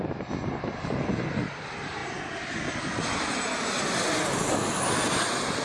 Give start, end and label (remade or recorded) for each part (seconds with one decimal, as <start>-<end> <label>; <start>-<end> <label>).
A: 0.0-5.6 recorded